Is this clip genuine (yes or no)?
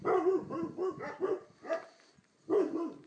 yes